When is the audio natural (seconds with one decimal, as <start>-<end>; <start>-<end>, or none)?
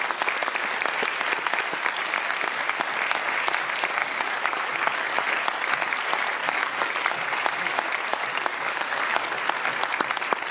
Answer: 0.0-4.0; 5.2-6.4; 6.9-8.1; 9.4-10.5